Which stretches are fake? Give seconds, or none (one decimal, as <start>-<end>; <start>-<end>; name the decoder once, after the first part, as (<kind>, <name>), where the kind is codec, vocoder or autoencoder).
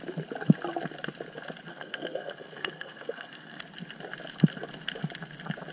1.7-3.6 (codec, SNAC)